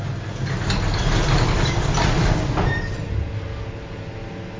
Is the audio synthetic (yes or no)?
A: no